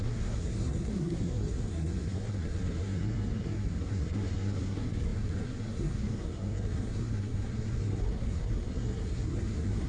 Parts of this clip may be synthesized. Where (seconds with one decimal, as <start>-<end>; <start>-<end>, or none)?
0.0-9.9